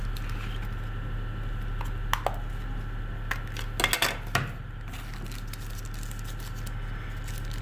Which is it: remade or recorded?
recorded